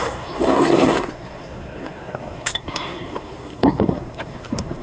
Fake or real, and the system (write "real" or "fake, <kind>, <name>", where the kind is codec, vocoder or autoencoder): fake, codec, SNAC